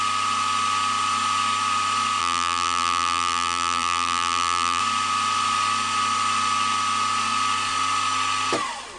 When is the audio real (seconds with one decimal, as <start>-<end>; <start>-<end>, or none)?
0.0-2.2; 4.8-9.0